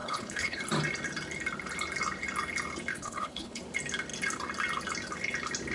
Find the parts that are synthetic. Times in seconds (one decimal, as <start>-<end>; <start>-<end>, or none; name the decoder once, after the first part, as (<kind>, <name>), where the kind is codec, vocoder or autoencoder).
0.0-0.6 (codec, HILCodec); 2.9-3.6